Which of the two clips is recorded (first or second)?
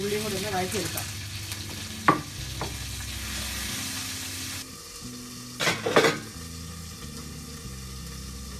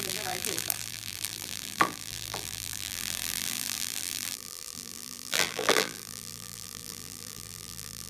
first